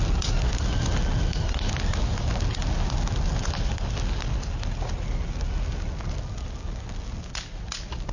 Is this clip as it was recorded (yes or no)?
yes